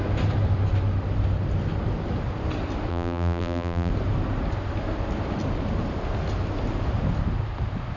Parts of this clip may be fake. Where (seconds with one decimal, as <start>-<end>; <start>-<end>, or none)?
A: 2.9-3.9